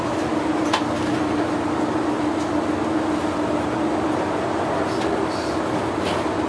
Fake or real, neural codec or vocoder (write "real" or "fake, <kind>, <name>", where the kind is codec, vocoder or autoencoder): real